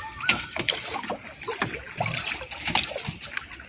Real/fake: real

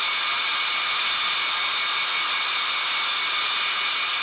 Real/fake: real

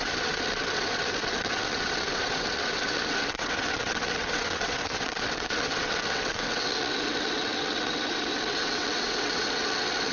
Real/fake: fake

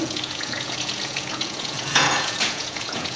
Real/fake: fake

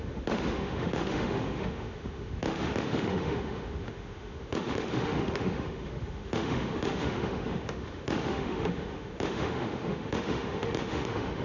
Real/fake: fake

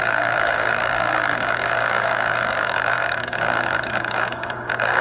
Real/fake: fake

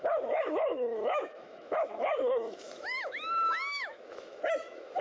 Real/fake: fake